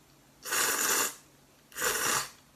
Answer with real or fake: real